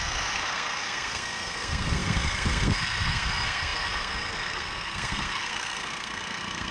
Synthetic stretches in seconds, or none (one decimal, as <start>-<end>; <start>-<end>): 0.0-6.7